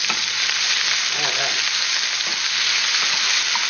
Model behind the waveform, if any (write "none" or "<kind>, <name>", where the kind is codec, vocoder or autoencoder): none